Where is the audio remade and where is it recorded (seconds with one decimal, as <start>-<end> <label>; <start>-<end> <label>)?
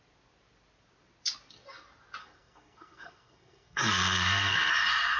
0.0-2.2 recorded; 2.2-4.7 remade; 4.7-5.2 recorded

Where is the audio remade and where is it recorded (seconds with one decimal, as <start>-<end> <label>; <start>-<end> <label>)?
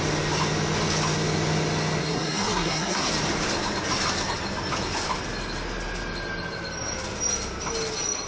0.0-2.0 recorded; 2.0-3.1 remade; 3.1-8.3 recorded